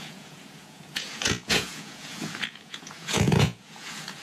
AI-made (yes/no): yes